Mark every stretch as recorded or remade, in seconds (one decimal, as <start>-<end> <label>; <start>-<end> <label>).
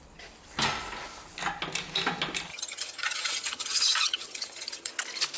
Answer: 0.0-2.5 recorded; 2.5-4.9 remade; 4.9-5.4 recorded